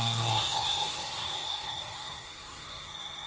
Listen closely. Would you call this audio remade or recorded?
remade